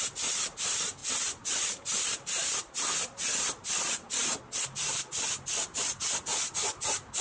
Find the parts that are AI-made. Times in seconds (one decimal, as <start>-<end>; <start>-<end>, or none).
none